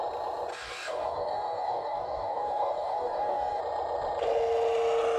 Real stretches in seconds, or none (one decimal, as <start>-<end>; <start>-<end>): 0.0-0.5; 3.6-5.2